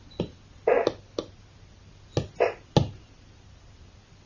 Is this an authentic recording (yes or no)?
yes